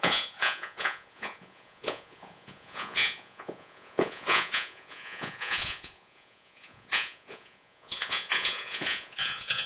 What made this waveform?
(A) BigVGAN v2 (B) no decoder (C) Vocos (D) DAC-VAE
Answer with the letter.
C